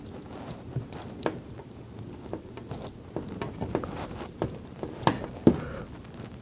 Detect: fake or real real